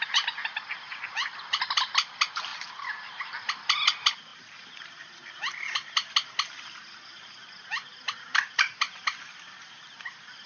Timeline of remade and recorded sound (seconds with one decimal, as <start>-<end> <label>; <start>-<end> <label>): 0.0-10.5 recorded